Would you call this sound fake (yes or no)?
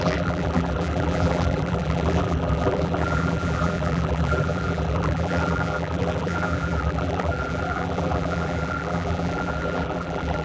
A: yes